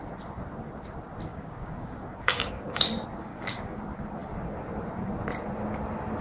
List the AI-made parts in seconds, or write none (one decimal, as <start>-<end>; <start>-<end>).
1.3-2.9; 3.3-3.8